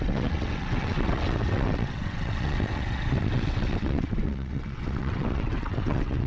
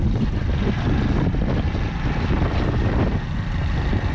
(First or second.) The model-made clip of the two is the first